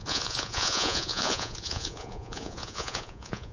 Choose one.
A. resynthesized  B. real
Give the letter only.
A